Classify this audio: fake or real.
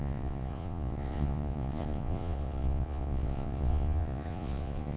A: fake